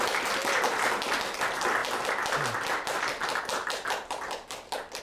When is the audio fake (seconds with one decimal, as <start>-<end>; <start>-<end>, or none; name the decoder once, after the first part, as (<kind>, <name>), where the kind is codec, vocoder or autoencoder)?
none